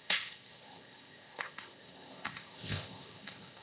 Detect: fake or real fake